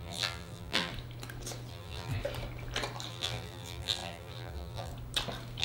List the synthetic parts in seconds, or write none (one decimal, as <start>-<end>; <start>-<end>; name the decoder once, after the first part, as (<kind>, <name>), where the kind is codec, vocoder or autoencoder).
0.0-0.9 (vocoder, BigVGAN v2); 1.7-2.1; 3.1-4.9